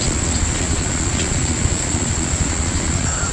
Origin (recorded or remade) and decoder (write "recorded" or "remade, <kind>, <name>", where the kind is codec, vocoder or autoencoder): remade, vocoder, Vocos